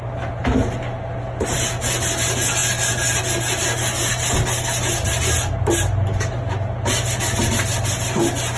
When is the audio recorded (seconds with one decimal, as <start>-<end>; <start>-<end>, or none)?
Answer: 0.0-8.6